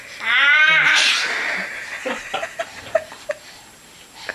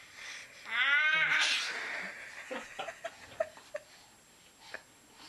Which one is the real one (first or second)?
second